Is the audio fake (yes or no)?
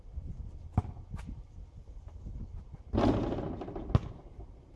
no